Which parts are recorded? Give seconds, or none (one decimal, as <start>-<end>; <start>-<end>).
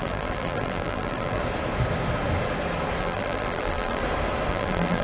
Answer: 1.4-3.0; 4.0-4.5